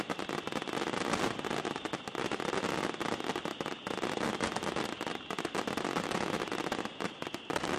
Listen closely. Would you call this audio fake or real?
real